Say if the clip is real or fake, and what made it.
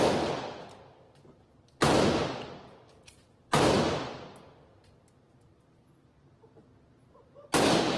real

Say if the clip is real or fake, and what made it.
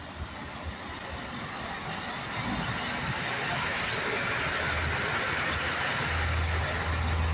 real